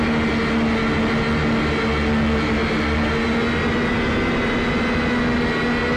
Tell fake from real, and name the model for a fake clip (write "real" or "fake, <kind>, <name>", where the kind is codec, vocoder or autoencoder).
real